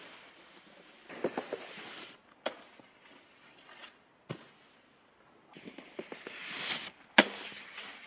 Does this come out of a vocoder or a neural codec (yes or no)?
no